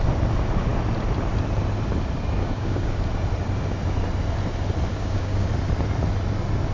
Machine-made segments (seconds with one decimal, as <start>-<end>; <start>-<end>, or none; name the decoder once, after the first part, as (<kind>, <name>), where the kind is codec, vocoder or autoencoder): 2.4-3.0 (codec, DAC); 4.9-5.5